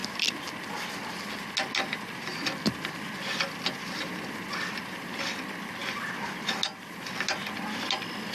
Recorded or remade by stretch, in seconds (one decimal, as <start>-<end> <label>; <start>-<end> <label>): 0.0-8.3 recorded

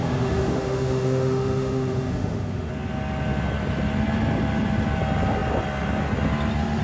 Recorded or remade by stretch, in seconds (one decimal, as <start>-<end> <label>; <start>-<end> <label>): 0.0-2.7 remade; 2.7-6.8 recorded

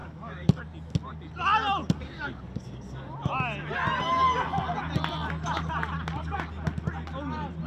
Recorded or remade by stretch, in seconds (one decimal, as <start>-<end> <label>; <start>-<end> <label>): 0.0-0.6 remade; 0.6-1.8 recorded; 1.8-3.1 remade; 3.1-7.7 recorded

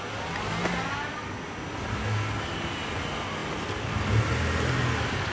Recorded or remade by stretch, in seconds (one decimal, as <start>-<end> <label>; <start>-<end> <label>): 0.0-5.3 recorded

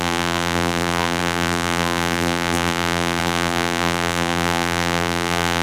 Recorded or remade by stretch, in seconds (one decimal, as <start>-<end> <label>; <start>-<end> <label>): 0.0-5.6 remade